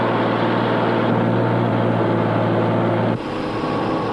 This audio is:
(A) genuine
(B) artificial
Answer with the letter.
A